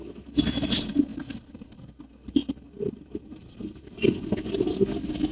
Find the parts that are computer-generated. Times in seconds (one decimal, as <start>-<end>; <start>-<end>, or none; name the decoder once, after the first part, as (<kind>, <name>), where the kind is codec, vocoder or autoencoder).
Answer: none

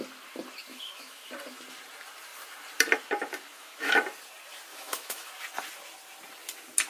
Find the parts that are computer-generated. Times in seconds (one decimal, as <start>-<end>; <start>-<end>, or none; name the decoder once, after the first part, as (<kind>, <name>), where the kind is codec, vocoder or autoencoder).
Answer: 0.7-1.3 (autoencoder, DAC-VAE); 3.5-4.0; 4.7-5.3